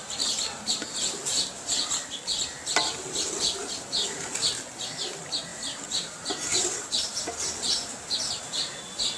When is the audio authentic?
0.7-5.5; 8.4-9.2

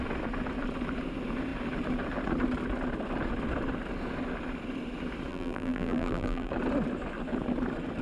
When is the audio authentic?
0.0-5.3; 6.5-8.0

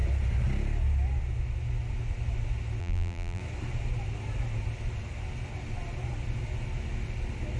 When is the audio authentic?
0.0-2.8; 3.4-7.6

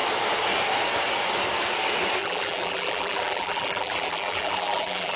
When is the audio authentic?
0.0-2.2

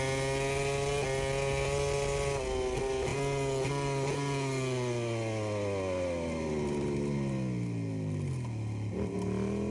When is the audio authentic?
0.0-9.7

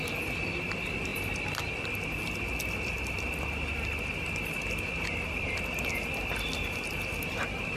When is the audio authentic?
0.0-7.8

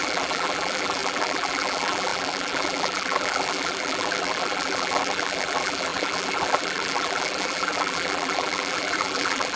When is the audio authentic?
none

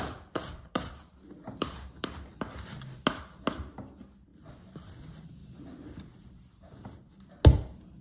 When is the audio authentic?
0.0-0.4; 3.2-4.3; 5.0-8.0